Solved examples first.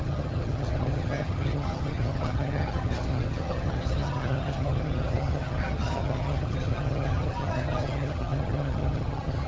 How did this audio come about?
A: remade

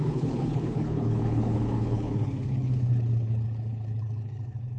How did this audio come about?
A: remade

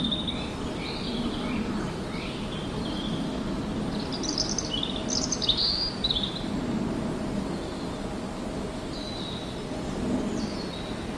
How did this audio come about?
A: recorded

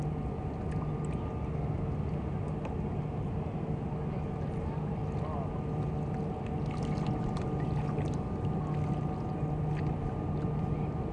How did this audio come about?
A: recorded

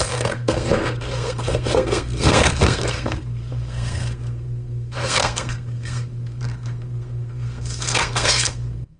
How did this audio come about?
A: remade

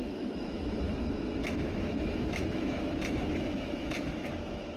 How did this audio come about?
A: remade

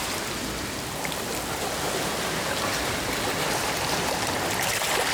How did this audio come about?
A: recorded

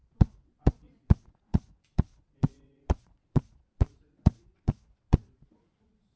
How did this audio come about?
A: remade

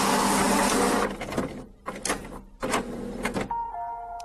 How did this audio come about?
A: recorded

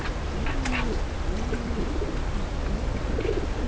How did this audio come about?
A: recorded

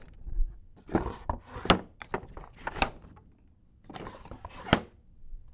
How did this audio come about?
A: recorded